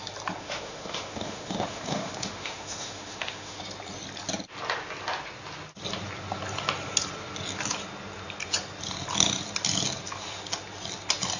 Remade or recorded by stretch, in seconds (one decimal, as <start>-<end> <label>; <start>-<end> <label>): 0.0-0.4 recorded; 0.4-3.6 remade; 3.6-11.4 recorded